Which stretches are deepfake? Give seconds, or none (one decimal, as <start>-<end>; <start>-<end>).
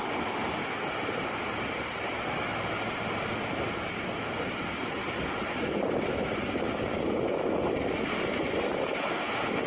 none